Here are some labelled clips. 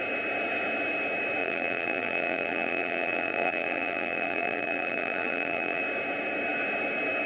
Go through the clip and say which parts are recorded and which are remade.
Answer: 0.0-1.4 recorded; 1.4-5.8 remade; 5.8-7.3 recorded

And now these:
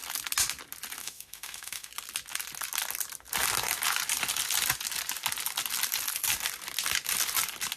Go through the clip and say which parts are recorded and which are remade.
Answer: 0.0-1.0 recorded; 1.0-1.9 remade; 1.9-7.8 recorded

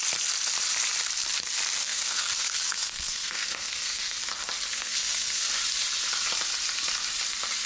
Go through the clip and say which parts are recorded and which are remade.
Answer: 0.0-1.8 recorded; 1.8-4.2 remade; 4.2-4.7 recorded; 4.7-5.5 remade; 5.5-7.7 recorded

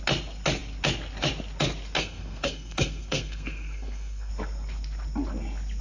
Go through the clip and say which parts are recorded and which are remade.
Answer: 0.0-2.0 recorded; 2.0-4.3 remade; 4.3-5.8 recorded

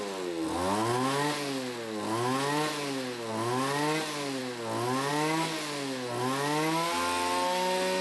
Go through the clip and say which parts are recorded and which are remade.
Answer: 0.0-8.0 recorded